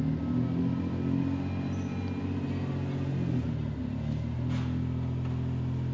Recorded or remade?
recorded